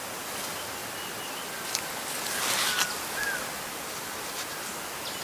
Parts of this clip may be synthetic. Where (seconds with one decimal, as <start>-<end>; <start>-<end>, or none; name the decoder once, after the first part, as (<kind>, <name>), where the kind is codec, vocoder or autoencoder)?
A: none